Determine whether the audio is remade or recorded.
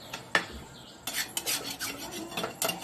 recorded